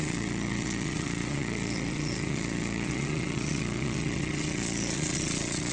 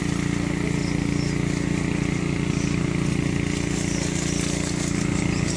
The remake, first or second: first